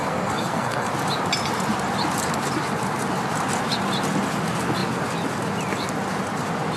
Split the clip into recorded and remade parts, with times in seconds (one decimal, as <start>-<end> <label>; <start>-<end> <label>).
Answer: 0.0-0.9 remade; 0.9-6.8 recorded